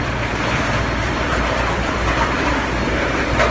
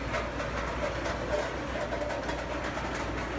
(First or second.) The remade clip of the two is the first